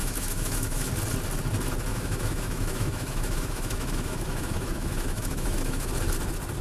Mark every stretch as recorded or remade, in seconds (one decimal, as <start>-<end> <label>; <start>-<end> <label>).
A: 0.0-0.9 remade; 0.9-1.9 recorded; 1.9-5.9 remade; 5.9-6.6 recorded